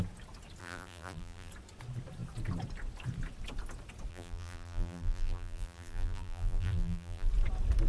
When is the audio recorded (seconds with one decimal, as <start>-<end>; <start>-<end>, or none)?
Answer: 0.0-0.6; 1.5-4.1; 7.3-7.9